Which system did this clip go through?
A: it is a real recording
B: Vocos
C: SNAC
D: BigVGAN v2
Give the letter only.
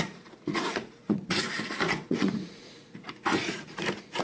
B